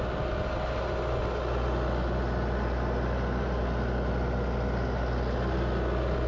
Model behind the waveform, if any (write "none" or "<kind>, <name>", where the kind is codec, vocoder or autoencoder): none